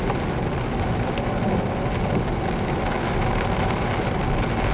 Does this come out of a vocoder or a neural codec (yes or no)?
no